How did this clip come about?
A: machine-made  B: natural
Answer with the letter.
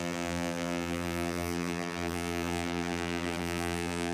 A